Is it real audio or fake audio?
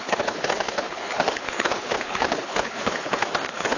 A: fake